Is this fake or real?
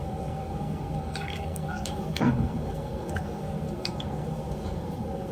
fake